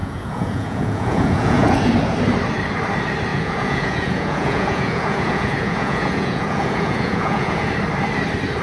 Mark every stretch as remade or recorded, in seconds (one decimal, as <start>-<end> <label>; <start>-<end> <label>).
0.0-1.9 remade; 1.9-3.3 recorded; 3.3-7.7 remade; 7.7-8.6 recorded